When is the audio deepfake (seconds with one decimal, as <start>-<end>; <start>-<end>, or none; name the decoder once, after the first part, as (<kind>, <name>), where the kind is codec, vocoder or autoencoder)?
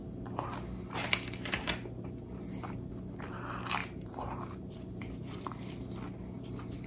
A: 3.8-5.6 (vocoder, BigVGAN v2)